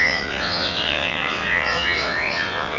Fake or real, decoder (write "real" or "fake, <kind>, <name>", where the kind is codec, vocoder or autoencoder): fake, vocoder, WaveNeXt